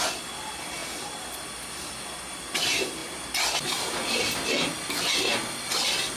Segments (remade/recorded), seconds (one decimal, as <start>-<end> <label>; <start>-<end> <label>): 0.0-6.2 recorded

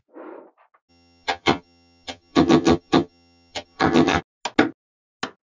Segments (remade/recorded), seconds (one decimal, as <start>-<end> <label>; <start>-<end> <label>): 0.0-0.9 recorded; 0.9-4.2 remade; 4.2-5.5 recorded

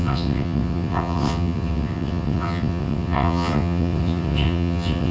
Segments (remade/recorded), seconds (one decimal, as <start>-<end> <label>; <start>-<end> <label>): 0.0-5.1 remade

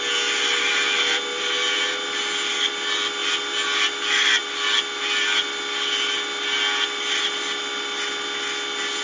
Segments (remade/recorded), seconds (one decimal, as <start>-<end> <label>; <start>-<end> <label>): 0.0-9.0 recorded

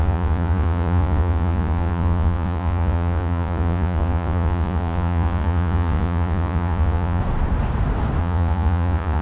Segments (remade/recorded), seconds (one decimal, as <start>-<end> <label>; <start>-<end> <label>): 0.0-7.2 remade; 7.2-8.2 recorded; 8.2-9.2 remade

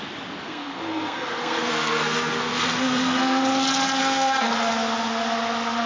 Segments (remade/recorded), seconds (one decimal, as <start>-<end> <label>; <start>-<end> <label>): 0.0-0.5 recorded; 0.5-3.4 remade; 3.4-4.0 recorded; 4.0-4.5 remade; 4.5-5.9 recorded

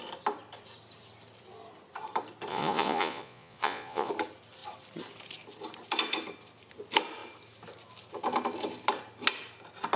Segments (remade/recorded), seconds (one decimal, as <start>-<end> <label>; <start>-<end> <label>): 0.0-2.5 recorded; 2.5-4.1 remade; 4.1-10.0 recorded

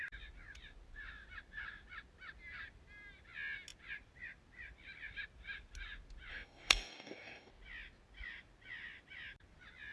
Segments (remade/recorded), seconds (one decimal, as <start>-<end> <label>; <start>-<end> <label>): 0.0-6.3 recorded; 6.3-7.5 remade; 7.5-9.9 recorded